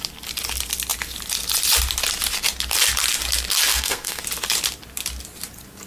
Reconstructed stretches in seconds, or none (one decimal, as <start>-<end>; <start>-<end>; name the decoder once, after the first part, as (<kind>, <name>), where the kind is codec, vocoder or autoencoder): 3.7-4.2 (codec, SNAC)

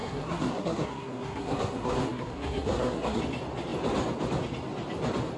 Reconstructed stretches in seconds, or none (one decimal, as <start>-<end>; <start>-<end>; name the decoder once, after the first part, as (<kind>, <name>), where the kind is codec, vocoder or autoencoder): 0.0-3.2 (codec, SNAC)